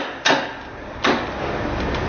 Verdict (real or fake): real